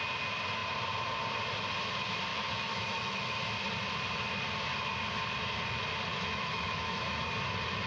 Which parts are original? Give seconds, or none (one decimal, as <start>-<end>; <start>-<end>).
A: 0.0-2.3; 3.5-6.1; 7.2-7.9

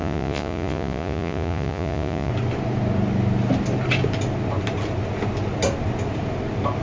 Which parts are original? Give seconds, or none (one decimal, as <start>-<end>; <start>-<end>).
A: 2.3-6.8

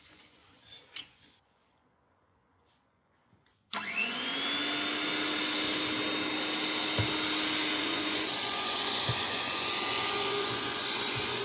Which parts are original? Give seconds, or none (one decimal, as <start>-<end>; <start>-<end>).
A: 4.3-7.8

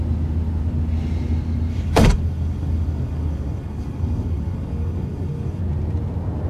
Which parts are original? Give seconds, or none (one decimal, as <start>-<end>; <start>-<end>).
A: 0.0-1.7; 5.6-6.5

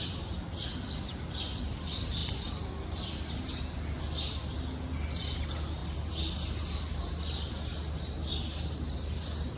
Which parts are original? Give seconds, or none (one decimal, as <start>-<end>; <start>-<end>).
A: 0.0-9.6